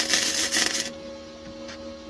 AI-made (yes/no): no